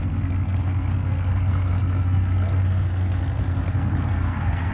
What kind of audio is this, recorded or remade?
remade